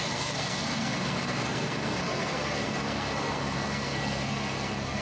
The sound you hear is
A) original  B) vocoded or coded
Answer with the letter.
B